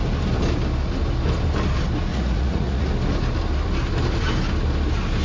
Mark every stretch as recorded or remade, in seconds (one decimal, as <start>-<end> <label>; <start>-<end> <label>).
0.0-2.1 recorded; 2.1-2.9 remade; 2.9-5.2 recorded